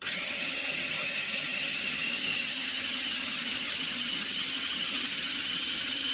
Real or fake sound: fake